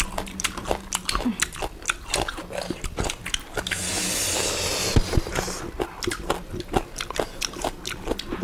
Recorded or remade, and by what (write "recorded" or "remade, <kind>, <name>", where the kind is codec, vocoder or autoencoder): recorded